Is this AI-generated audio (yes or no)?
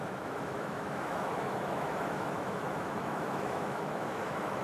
yes